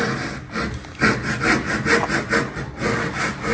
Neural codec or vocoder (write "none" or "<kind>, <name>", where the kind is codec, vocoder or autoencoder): none